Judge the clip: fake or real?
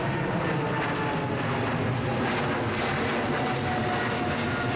real